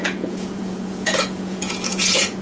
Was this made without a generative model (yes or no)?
no